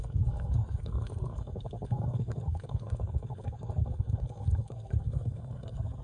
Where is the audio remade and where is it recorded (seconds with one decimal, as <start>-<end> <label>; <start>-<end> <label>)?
0.0-6.0 remade